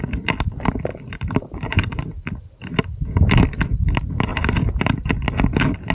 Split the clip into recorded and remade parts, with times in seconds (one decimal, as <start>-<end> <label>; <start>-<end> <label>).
0.0-0.9 recorded; 0.9-2.0 remade; 2.0-4.3 recorded; 4.3-5.1 remade; 5.1-5.9 recorded

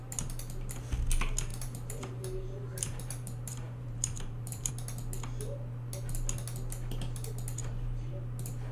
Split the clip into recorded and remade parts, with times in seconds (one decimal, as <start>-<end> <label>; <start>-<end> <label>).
0.0-1.5 recorded; 1.5-4.7 remade; 4.7-7.6 recorded; 7.6-8.1 remade; 8.1-8.7 recorded